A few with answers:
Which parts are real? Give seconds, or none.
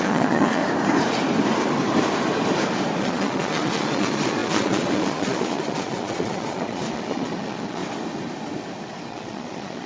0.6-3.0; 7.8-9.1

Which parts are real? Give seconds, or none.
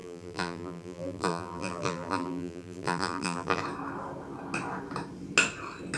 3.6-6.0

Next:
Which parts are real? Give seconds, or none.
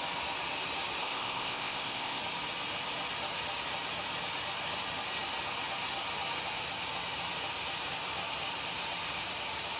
0.0-1.0; 2.2-9.8